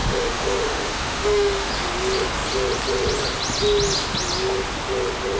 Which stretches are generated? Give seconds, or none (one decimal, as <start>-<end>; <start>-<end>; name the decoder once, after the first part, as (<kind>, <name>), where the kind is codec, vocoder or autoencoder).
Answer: 0.0-1.7 (autoencoder, DAC-VAE)